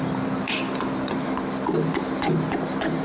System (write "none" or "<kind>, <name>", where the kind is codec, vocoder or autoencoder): none